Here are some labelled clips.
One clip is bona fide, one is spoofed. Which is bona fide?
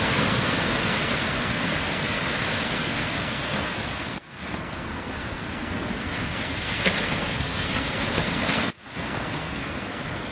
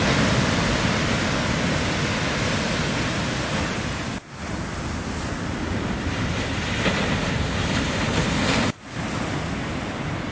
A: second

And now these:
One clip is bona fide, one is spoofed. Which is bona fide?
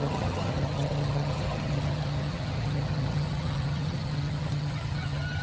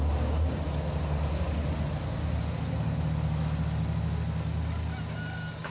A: second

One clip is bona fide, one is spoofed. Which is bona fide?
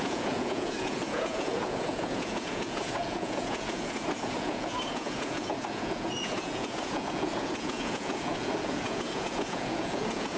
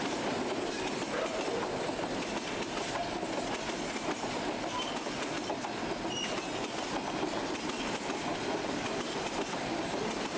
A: second